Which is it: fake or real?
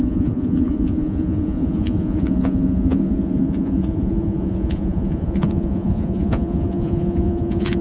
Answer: fake